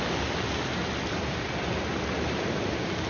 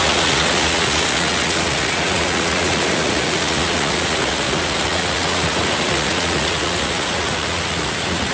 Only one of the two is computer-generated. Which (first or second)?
second